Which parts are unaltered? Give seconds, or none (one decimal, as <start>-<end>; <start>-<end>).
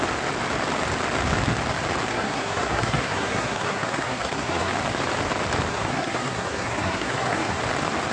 0.0-2.1; 4.7-5.7; 7.6-8.1